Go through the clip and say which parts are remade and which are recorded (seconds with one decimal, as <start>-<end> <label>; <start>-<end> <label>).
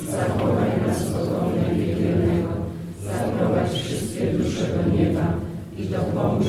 0.0-4.1 recorded; 4.1-4.6 remade; 4.6-6.5 recorded